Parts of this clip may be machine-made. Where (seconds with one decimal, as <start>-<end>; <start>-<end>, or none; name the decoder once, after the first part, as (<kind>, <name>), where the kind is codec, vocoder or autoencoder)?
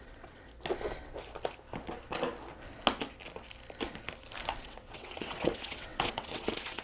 0.0-0.5 (vocoder, WaveNeXt); 4.6-6.8